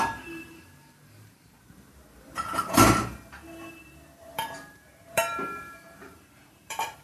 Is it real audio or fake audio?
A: fake